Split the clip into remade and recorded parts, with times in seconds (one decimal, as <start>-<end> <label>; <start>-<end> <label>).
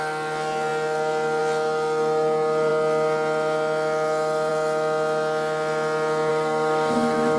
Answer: 0.0-6.3 recorded; 6.3-7.4 remade